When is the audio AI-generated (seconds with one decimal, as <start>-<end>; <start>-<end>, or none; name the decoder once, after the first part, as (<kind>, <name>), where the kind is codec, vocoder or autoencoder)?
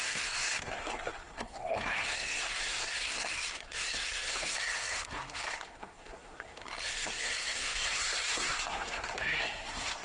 0.0-10.0 (codec, SNAC)